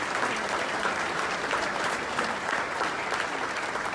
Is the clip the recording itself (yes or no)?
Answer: no